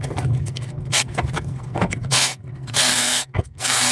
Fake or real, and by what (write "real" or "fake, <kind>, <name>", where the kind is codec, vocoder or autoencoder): fake, codec, SNAC